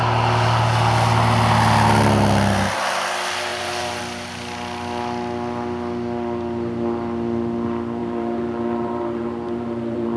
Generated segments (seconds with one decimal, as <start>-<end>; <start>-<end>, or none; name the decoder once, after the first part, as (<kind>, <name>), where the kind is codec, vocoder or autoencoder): 3.5-4.0 (vocoder, BigVGAN v2); 8.0-10.2